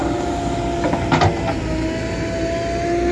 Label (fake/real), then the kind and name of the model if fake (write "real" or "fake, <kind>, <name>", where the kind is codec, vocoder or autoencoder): real